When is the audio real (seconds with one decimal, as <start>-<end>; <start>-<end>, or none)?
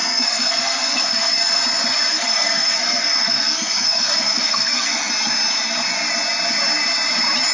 1.6-2.1; 5.1-7.5